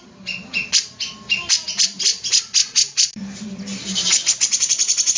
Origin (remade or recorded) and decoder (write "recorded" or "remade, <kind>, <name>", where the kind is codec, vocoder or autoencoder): recorded